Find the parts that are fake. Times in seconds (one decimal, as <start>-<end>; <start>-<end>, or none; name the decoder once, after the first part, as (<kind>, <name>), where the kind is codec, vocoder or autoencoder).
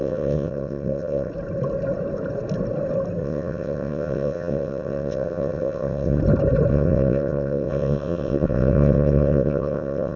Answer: 0.0-1.3 (vocoder, WaveNeXt); 3.2-6.2; 6.7-10.2